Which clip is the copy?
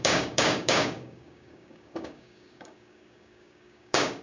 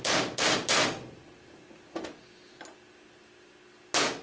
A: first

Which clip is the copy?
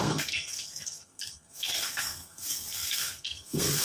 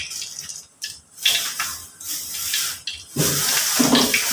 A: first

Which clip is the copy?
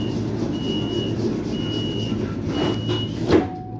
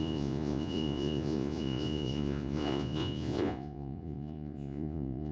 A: second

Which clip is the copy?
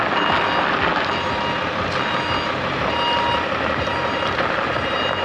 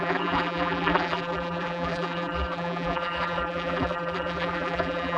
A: second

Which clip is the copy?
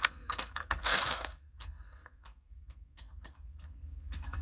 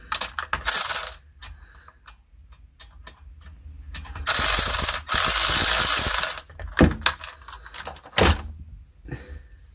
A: first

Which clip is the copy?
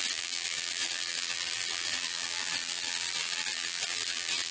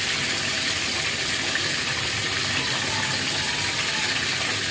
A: first